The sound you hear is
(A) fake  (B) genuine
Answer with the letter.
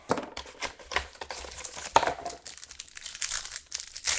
B